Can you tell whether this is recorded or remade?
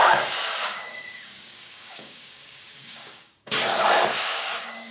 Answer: remade